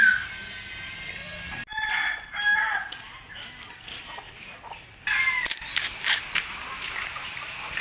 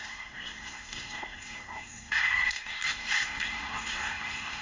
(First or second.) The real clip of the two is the first